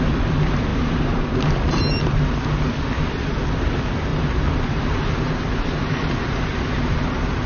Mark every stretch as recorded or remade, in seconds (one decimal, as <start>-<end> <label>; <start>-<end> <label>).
0.0-0.7 recorded; 0.7-2.0 remade; 2.0-4.1 recorded; 4.1-7.5 remade